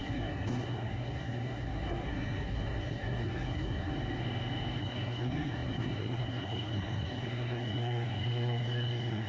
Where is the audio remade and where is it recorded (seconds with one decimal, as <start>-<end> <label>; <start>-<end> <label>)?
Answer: 0.0-3.9 remade; 3.9-4.8 recorded; 4.8-9.3 remade